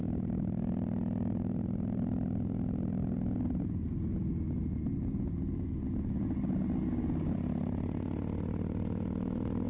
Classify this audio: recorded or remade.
recorded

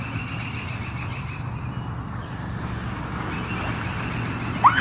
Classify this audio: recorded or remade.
recorded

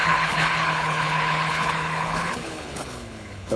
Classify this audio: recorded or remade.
remade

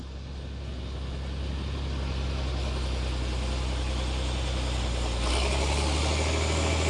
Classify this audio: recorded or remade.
recorded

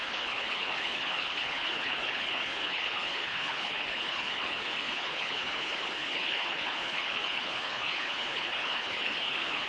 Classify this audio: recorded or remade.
remade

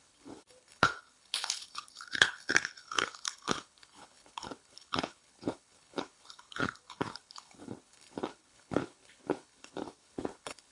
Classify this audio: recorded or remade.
remade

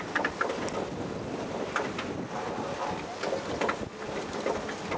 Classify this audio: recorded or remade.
recorded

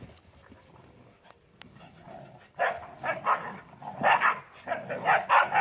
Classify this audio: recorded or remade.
recorded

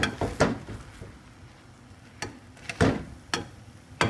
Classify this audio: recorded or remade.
recorded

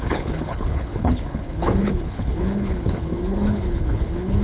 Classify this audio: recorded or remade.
remade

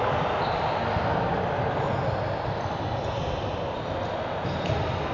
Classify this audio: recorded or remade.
recorded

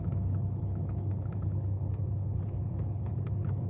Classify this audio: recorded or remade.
remade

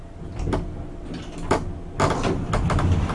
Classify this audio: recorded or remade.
recorded